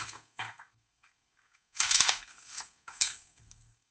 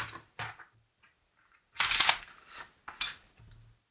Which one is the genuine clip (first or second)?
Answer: second